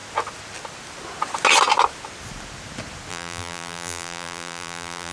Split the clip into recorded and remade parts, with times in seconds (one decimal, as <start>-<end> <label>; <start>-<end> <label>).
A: 0.0-3.1 recorded; 3.1-5.1 remade

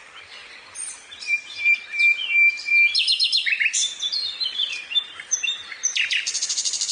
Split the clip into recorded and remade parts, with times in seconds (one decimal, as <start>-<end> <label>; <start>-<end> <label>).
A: 0.0-0.4 remade; 0.4-0.9 recorded; 0.9-2.7 remade; 2.7-3.3 recorded; 3.3-3.8 remade; 3.8-4.5 recorded; 4.5-6.9 remade

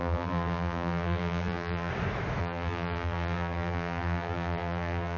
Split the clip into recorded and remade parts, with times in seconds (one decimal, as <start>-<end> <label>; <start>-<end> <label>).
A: 0.0-1.9 remade; 1.9-2.4 recorded; 2.4-5.2 remade

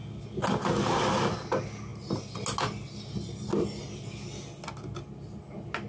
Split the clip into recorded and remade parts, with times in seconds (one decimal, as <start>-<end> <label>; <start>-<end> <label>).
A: 0.0-5.9 recorded